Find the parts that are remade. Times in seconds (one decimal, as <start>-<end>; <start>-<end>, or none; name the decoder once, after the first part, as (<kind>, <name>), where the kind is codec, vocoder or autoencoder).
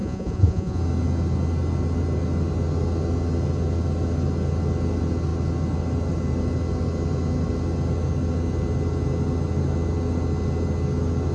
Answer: 0.0-0.8 (vocoder, Vocos)